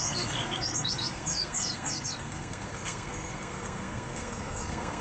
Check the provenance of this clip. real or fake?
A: fake